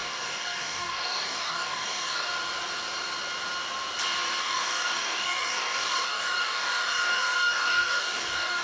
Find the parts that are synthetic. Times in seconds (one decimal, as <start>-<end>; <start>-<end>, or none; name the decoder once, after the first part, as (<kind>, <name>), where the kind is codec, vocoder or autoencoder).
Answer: 0.0-2.3 (codec, DAC); 4.4-8.6